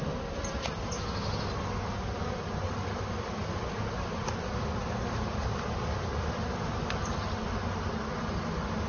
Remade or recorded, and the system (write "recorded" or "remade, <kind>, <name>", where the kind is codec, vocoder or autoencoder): recorded